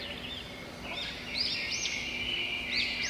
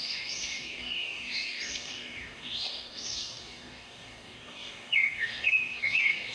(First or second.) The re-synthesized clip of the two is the second